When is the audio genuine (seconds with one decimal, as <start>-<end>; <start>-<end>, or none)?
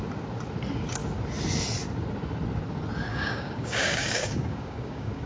0.0-3.1